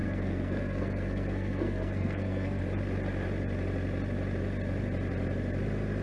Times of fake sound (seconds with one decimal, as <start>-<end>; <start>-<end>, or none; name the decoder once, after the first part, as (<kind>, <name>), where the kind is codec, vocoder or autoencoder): 0.0-2.6 (codec, SNAC)